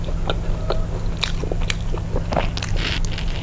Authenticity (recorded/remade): recorded